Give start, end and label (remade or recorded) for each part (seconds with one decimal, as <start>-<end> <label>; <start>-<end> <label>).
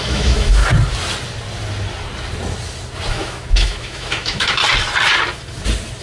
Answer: 0.0-0.6 remade; 0.6-3.1 recorded; 3.1-4.6 remade; 4.6-6.0 recorded